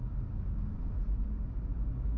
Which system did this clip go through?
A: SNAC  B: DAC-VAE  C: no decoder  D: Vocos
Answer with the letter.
C